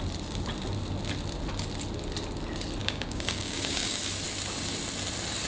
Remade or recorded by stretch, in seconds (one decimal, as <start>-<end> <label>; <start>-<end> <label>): 0.0-2.8 recorded; 2.8-4.0 remade; 4.0-5.5 recorded